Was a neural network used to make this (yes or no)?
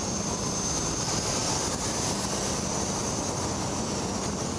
no